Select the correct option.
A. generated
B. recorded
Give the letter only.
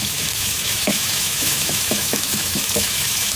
A